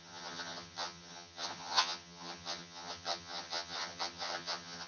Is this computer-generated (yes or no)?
yes